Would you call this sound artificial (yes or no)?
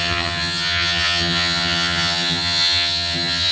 yes